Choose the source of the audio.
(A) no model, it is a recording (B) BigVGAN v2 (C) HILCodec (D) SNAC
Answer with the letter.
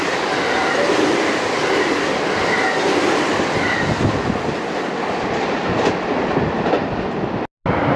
A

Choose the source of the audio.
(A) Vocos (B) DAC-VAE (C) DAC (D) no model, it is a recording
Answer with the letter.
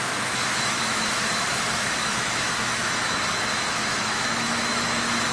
B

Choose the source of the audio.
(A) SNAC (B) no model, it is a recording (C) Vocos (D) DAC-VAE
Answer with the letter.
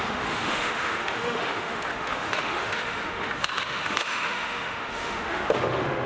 D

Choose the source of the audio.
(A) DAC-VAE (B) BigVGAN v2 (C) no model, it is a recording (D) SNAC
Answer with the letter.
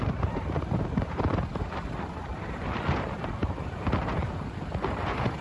B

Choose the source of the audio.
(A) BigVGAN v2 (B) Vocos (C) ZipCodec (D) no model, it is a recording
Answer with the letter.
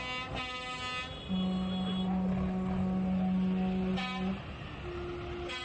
D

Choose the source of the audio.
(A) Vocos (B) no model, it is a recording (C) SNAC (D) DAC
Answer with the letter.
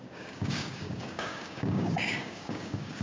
D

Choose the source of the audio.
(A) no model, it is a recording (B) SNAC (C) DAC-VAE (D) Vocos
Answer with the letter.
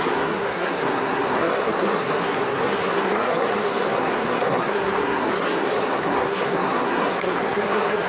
B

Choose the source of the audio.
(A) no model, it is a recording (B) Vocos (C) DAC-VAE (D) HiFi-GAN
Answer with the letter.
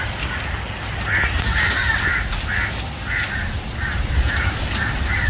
A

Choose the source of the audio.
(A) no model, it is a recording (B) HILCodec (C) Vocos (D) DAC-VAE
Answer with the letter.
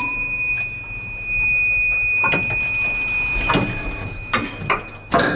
A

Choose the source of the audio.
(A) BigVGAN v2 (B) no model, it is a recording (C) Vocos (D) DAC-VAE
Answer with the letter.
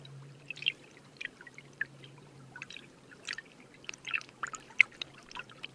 A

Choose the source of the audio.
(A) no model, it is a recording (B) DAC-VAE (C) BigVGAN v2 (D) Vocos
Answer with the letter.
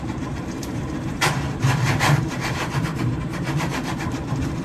C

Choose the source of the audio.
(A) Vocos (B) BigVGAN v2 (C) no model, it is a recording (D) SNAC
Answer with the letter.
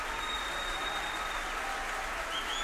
C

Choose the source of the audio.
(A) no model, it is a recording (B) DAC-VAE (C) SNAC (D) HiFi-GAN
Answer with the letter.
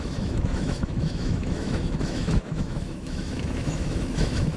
B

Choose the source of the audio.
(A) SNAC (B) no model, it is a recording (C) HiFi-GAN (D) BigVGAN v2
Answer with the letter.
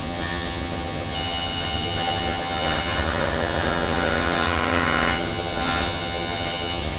C